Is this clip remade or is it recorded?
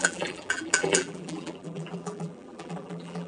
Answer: remade